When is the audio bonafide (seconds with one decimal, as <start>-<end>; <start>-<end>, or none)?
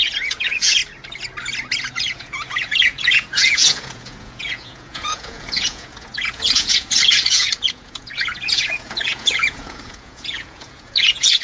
0.8-1.9